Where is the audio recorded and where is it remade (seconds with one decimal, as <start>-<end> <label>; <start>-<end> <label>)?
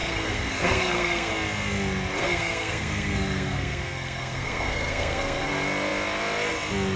0.0-1.3 remade; 1.3-2.2 recorded; 2.2-5.5 remade; 5.5-7.0 recorded